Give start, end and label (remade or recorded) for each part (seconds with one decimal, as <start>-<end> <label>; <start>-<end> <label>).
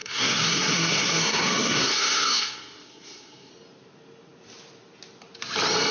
0.0-3.5 remade; 3.5-5.9 recorded